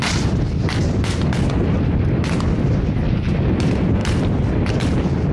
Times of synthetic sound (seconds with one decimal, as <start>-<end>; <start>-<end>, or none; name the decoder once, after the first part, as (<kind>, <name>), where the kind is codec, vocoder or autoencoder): 4.0-4.7 (vocoder, BigVGAN v2)